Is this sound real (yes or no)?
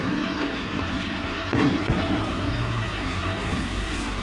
no